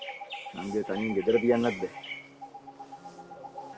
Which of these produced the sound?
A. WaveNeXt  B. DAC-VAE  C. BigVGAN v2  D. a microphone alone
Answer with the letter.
D